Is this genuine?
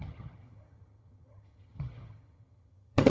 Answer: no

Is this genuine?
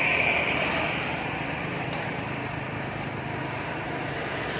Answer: yes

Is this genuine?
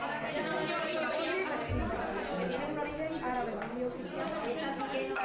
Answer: yes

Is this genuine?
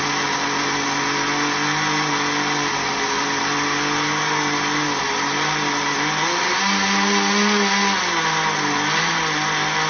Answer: yes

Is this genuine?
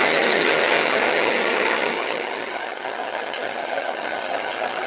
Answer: no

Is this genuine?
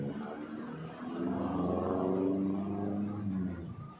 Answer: yes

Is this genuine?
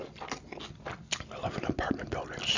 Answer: yes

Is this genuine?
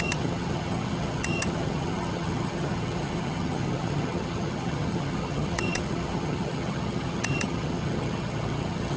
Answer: no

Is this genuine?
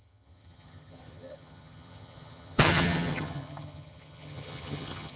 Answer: no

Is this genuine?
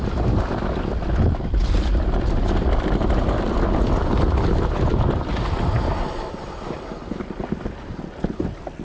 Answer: yes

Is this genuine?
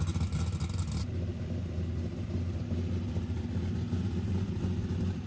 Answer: yes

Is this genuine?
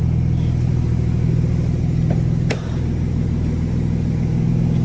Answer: yes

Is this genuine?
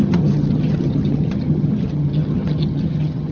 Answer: no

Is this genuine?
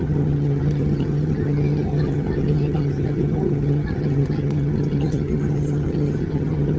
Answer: no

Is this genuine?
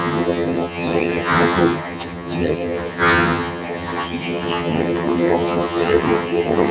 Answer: no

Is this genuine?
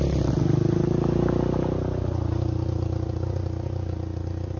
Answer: yes